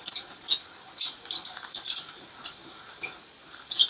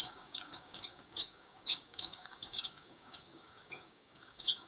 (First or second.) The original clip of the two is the first